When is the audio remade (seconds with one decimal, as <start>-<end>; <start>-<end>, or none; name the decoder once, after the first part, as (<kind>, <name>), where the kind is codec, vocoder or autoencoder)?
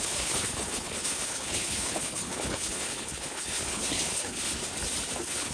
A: 0.0-4.6 (codec, HILCodec); 5.1-5.5